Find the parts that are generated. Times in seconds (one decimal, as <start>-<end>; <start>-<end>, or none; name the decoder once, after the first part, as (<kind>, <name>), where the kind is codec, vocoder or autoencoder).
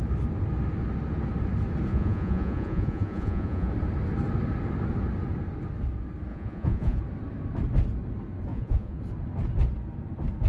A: 1.9-3.7 (vocoder, Vocos); 6.3-7.0; 8.5-9.0